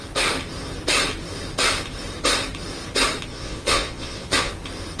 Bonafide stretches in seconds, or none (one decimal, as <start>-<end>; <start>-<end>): 0.0-3.3; 4.5-5.0